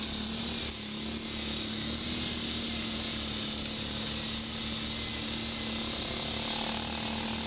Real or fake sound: real